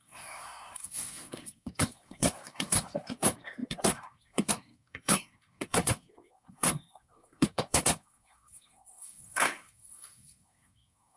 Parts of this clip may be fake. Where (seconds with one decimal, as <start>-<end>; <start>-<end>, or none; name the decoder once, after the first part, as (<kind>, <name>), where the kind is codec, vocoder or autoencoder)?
0.0-11.2 (codec, SNAC)